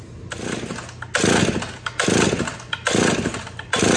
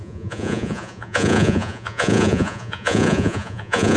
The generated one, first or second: second